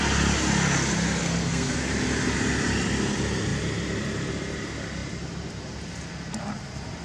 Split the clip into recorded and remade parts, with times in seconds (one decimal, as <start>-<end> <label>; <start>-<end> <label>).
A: 0.0-1.2 recorded; 1.2-1.9 remade; 1.9-7.0 recorded